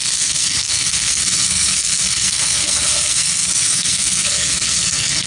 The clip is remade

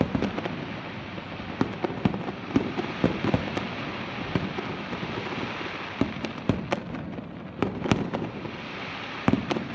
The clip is recorded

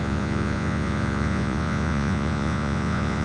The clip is remade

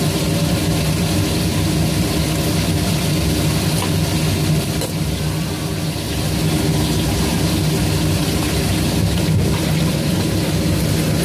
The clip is recorded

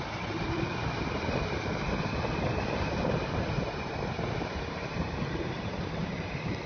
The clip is remade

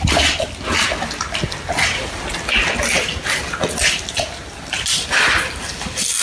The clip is recorded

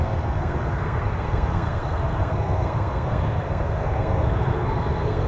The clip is remade